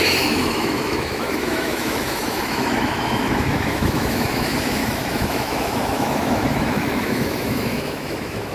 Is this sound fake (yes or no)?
yes